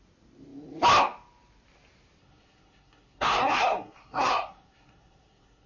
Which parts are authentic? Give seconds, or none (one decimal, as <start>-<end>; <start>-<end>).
0.0-2.2